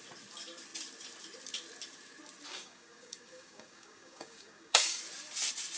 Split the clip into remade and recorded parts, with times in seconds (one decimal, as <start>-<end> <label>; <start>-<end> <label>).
0.0-2.5 recorded; 2.5-5.0 remade; 5.0-5.8 recorded